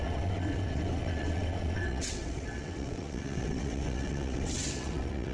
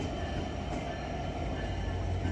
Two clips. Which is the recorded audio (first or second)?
second